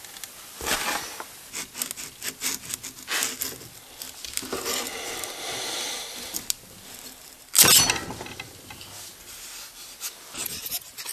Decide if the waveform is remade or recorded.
recorded